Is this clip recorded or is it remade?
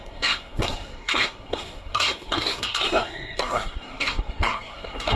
remade